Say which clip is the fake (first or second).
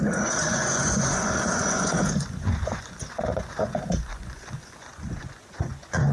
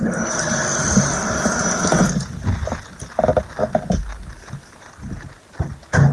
first